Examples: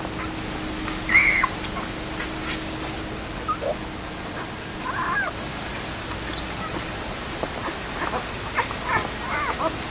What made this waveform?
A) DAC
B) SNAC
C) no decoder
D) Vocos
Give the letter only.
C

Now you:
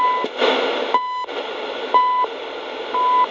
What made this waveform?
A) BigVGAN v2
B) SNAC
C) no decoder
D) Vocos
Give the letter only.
C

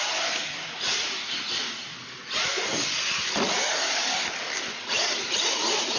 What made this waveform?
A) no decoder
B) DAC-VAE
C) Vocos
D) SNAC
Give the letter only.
A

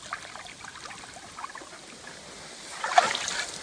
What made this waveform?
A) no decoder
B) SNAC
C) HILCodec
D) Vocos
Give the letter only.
A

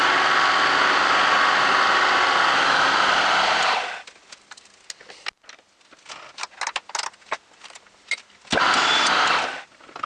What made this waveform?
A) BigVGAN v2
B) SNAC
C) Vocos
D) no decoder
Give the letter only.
D